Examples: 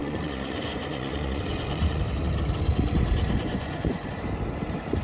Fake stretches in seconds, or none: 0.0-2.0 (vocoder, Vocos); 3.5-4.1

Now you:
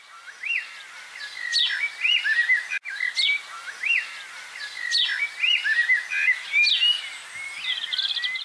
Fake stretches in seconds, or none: none

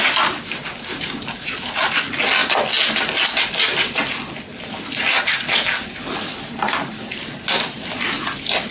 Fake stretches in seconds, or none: none

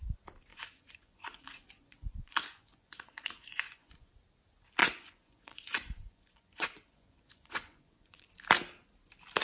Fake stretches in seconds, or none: 0.5-4.1 (vocoder, Vocos); 4.8-8.3